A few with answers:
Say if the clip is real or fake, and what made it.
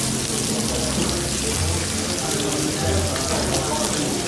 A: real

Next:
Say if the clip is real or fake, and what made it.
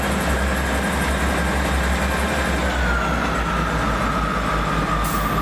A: real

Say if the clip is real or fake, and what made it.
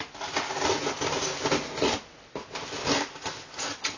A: real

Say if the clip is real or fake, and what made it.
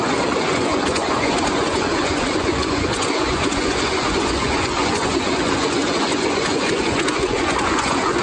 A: fake, vocoder, Vocos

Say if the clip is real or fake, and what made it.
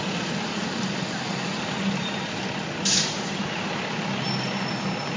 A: real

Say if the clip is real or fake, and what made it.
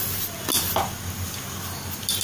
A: real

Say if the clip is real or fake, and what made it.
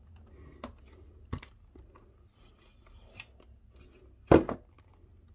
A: real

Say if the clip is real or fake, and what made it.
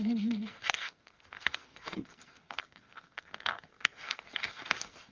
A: fake, codec, SNAC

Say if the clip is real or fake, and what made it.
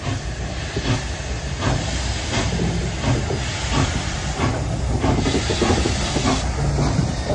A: real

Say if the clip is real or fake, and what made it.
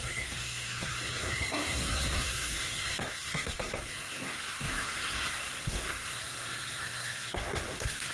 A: fake, codec, SNAC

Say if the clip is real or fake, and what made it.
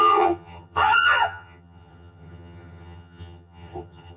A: fake, vocoder, HiFi-GAN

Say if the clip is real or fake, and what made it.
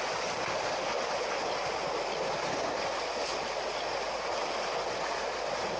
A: real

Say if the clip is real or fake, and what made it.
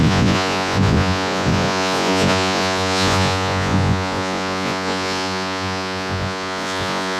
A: fake, vocoder, Vocos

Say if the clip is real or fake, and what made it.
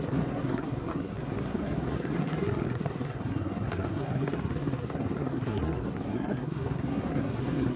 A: fake, codec, SNAC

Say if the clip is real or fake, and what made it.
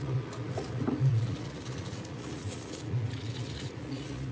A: fake, vocoder, Vocos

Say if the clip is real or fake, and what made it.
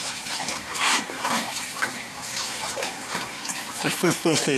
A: fake, codec, SNAC